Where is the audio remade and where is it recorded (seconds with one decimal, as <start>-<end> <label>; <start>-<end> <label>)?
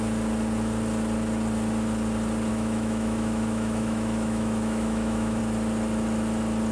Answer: 0.0-2.5 recorded; 2.5-5.4 remade; 5.4-6.7 recorded